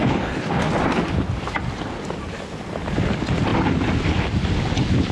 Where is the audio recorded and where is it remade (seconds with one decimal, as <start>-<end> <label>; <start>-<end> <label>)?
0.0-0.7 remade; 0.7-5.1 recorded